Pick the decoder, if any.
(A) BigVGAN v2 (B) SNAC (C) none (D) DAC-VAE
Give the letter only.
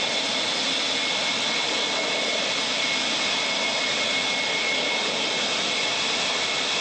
C